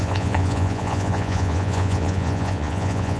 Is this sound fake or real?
fake